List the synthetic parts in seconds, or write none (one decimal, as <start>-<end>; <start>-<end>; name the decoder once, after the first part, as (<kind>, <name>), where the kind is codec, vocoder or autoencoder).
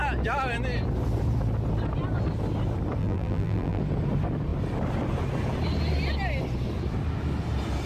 3.0-3.8 (vocoder, BigVGAN v2)